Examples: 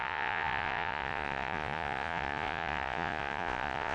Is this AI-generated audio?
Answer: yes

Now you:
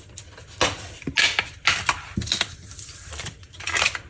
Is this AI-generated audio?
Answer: no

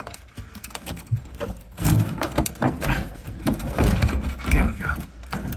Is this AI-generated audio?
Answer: yes